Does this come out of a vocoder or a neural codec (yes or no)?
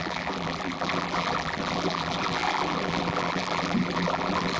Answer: yes